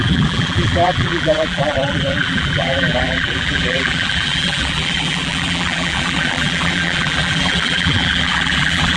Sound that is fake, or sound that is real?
fake